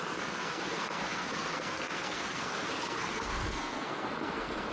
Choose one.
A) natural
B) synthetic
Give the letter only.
B